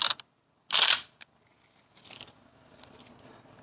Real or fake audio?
real